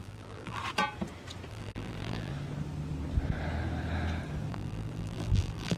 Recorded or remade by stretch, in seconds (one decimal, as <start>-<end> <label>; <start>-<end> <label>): 0.0-0.6 remade; 0.6-1.5 recorded; 1.5-2.3 remade; 2.3-4.5 recorded; 4.5-5.8 remade